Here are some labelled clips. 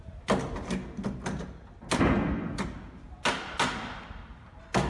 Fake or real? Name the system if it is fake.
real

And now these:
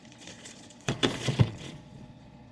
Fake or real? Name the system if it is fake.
fake, vocoder, Vocos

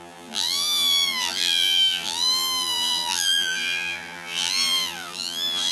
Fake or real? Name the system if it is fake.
fake, vocoder, BigVGAN v2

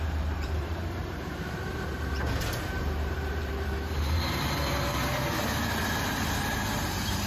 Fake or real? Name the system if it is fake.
fake, vocoder, BigVGAN v2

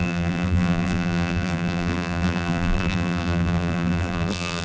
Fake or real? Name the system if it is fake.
fake, vocoder, BigVGAN v2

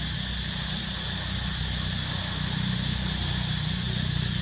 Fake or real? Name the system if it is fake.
real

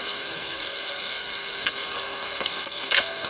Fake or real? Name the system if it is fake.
fake, codec, SNAC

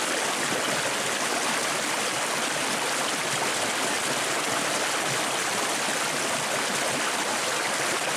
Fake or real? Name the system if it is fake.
real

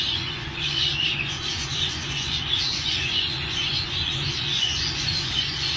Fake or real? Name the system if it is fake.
fake, vocoder, Vocos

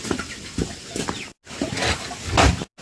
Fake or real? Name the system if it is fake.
real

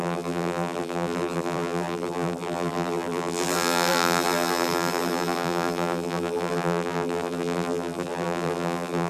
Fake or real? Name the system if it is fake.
fake, vocoder, BigVGAN v2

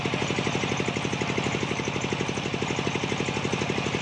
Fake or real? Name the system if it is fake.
real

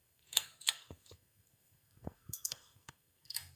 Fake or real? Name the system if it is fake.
fake, codec, SNAC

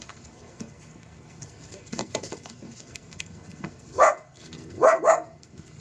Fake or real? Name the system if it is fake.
fake, codec, SNAC